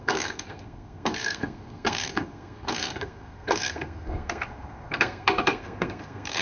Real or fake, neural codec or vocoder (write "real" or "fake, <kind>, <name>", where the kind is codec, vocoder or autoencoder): fake, codec, SNAC